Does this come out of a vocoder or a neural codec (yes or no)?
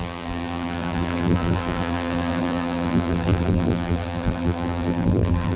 yes